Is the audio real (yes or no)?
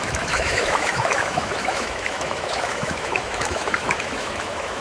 no